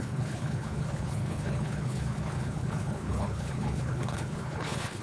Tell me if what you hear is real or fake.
fake